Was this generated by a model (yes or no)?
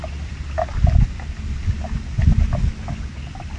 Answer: no